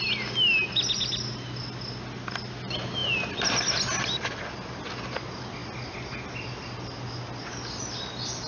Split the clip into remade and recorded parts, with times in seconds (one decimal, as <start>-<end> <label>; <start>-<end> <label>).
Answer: 0.0-8.5 recorded